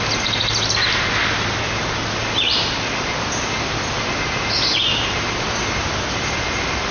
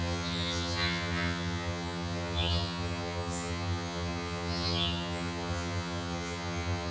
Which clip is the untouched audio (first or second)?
first